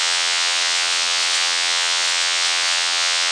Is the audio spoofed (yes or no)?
yes